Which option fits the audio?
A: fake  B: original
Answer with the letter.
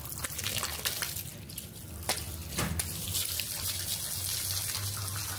B